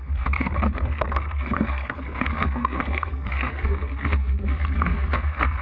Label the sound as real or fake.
fake